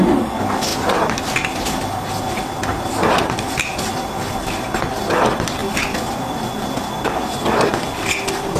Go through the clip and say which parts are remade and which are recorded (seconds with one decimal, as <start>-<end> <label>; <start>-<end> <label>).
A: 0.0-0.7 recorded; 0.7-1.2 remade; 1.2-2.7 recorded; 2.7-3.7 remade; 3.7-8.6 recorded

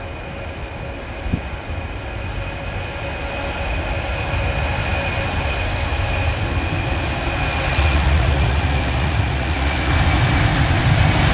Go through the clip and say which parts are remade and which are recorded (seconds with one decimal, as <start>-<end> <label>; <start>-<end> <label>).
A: 0.0-7.7 recorded; 7.7-9.9 remade; 9.9-11.3 recorded

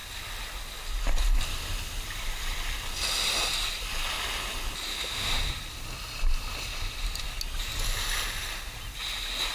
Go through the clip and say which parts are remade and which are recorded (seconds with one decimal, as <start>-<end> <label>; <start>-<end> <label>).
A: 0.0-4.9 recorded; 4.9-5.5 remade; 5.5-9.5 recorded

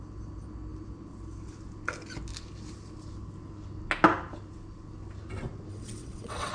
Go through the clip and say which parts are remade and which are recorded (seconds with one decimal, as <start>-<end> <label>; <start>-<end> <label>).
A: 0.0-5.7 recorded; 5.7-6.5 remade